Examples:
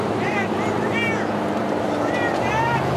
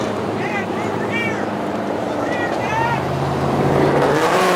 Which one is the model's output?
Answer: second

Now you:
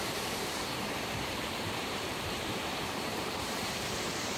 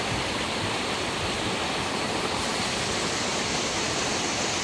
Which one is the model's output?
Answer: first